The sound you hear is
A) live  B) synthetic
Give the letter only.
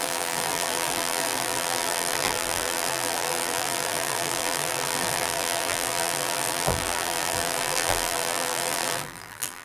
B